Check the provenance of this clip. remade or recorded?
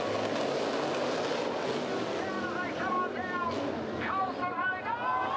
recorded